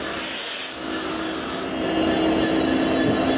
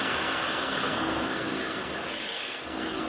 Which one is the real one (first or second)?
first